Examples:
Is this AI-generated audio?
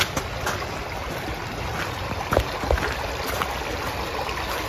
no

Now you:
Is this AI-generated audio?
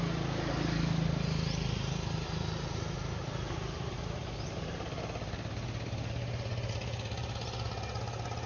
no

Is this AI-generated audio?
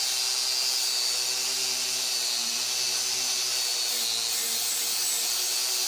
no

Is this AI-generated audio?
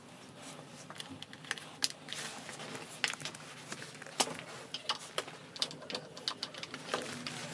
no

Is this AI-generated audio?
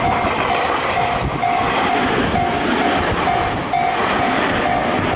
no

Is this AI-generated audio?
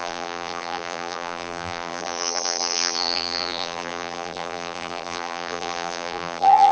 yes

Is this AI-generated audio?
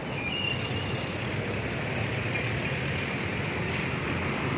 no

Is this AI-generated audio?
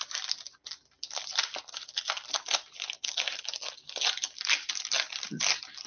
yes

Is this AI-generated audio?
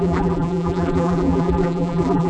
yes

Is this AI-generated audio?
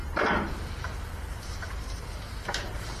yes